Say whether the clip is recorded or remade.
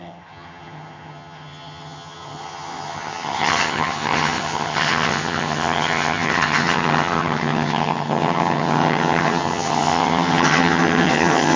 remade